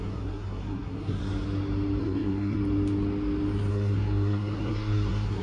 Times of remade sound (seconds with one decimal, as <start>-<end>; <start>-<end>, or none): 0.0-1.2; 2.0-2.6; 3.7-5.4